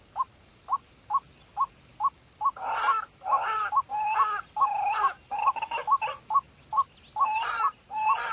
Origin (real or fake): real